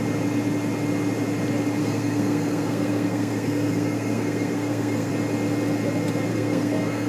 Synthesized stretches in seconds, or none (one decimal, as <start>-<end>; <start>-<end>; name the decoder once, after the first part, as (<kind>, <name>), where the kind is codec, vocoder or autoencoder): 1.8-5.1 (codec, SNAC); 6.3-7.1